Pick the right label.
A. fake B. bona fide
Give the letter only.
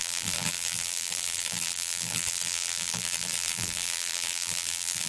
A